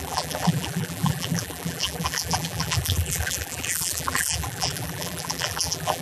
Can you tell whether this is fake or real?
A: fake